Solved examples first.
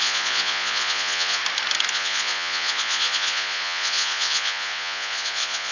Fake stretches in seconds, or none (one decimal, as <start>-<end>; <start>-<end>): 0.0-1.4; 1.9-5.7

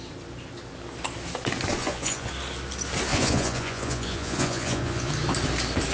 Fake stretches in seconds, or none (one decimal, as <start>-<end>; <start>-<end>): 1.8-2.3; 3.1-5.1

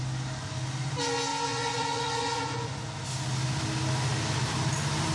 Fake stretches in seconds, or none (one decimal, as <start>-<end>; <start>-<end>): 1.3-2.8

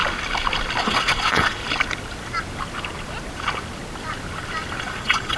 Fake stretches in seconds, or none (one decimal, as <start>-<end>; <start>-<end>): 0.8-1.6; 4.8-5.4